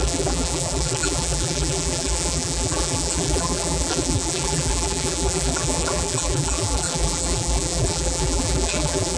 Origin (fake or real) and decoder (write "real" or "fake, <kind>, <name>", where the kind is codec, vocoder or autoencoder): fake, vocoder, BigVGAN v2